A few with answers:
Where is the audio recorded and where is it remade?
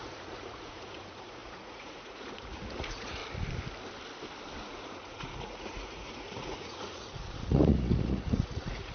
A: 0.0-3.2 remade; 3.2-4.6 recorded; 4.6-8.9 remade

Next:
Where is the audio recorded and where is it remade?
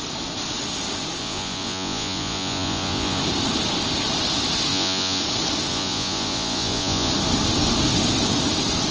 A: 0.0-1.2 recorded; 1.2-3.2 remade; 3.2-4.7 recorded; 4.7-5.2 remade; 5.2-5.7 recorded; 5.7-7.1 remade; 7.1-8.9 recorded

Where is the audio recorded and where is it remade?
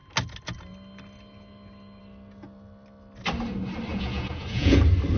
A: 0.0-3.9 recorded; 3.9-4.8 remade; 4.8-5.2 recorded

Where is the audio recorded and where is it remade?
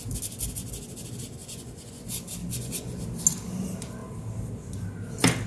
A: 0.0-1.4 recorded; 1.4-2.0 remade; 2.0-2.4 recorded; 2.4-3.0 remade; 3.0-5.5 recorded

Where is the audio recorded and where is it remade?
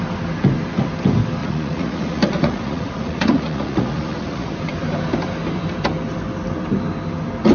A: 0.0-1.4 recorded; 1.4-4.5 remade; 4.5-7.5 recorded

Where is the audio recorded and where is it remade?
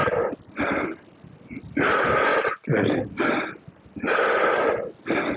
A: 0.0-5.4 recorded